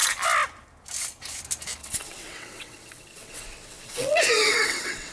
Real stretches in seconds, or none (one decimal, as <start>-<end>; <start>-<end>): 0.0-1.8

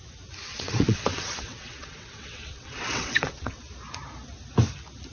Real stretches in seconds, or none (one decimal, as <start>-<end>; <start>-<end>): 0.0-0.5; 3.6-5.1

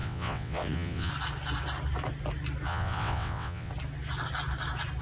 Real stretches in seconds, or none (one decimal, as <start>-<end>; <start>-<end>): 1.1-2.7; 3.7-5.0